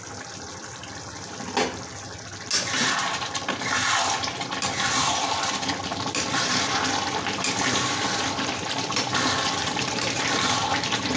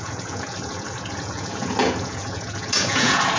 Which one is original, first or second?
first